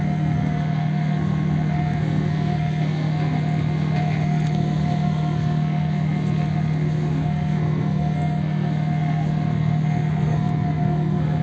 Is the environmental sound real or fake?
fake